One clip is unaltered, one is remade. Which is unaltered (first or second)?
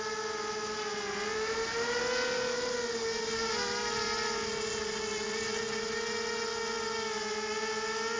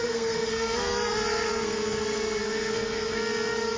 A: first